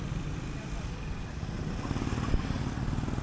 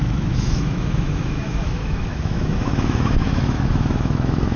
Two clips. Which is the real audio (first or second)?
first